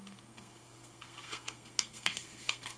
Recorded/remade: remade